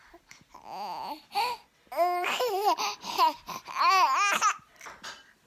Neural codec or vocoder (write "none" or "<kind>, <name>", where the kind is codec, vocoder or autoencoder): none